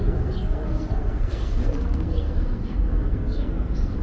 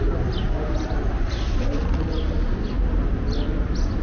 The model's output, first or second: first